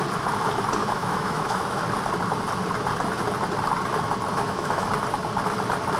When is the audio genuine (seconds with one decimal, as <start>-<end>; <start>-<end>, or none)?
0.0-0.8; 1.8-4.3; 4.9-6.0